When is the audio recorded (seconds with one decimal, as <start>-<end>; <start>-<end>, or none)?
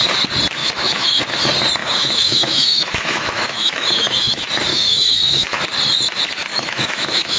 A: 0.0-0.6; 1.2-1.8; 4.3-4.7; 5.6-6.5